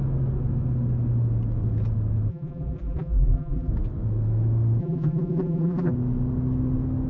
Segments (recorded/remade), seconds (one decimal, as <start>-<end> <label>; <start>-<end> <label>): 0.0-2.3 recorded; 2.3-3.7 remade; 3.7-4.8 recorded; 4.8-5.9 remade; 5.9-7.1 recorded